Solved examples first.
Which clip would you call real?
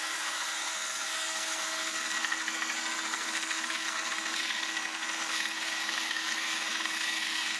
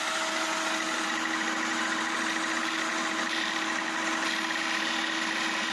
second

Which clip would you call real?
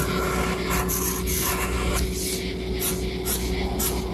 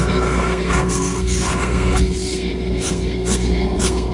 first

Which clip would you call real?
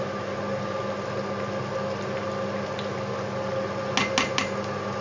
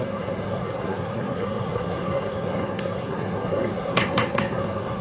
first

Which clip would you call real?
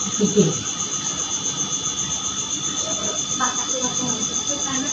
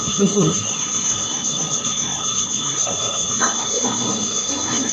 first